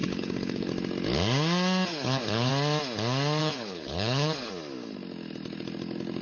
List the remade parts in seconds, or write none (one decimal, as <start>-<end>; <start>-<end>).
0.0-0.7; 1.9-2.5; 3.4-4.5